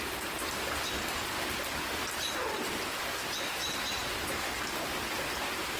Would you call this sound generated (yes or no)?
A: no